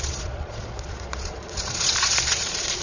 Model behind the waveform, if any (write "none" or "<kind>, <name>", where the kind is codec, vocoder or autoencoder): vocoder, Vocos